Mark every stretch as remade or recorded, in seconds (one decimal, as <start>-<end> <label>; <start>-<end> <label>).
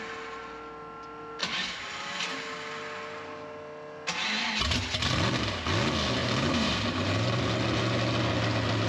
0.0-1.4 recorded; 1.4-2.2 remade; 2.2-6.2 recorded; 6.2-7.4 remade; 7.4-8.9 recorded